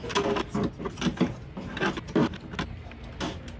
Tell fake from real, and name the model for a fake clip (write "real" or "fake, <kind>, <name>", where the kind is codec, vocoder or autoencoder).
real